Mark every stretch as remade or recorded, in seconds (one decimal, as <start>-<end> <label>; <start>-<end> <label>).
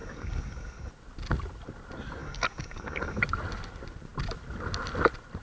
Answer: 0.0-0.9 remade; 0.9-2.2 recorded; 2.2-3.2 remade; 3.2-5.4 recorded